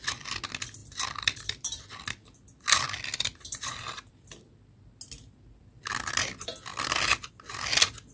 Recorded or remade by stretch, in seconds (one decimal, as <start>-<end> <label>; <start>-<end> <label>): 0.0-0.8 recorded; 0.8-4.1 remade; 4.1-6.7 recorded; 6.7-7.3 remade; 7.3-8.1 recorded